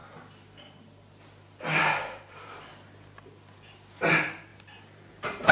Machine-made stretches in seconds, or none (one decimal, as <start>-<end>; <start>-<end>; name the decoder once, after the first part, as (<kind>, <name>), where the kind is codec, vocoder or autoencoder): 2.0-2.7 (vocoder, BigVGAN v2); 4.1-5.5